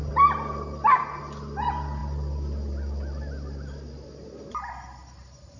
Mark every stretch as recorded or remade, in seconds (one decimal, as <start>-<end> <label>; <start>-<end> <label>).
0.0-5.6 recorded

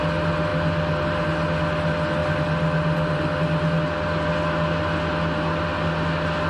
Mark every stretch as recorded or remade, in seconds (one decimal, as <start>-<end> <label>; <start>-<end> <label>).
0.0-6.5 recorded

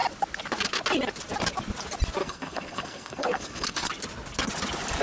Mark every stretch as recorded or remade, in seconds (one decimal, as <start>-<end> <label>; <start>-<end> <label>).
0.0-2.2 recorded; 2.2-3.9 remade; 3.9-5.0 recorded

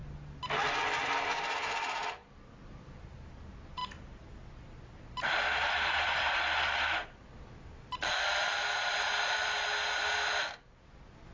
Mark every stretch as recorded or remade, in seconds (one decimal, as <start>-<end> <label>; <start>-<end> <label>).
0.0-11.3 recorded

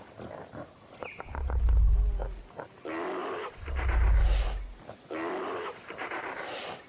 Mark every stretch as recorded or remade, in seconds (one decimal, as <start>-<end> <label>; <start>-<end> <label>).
0.0-6.9 recorded